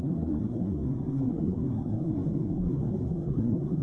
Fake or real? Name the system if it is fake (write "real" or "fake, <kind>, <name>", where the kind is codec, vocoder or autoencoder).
fake, codec, SNAC